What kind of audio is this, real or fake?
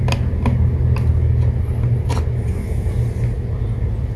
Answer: real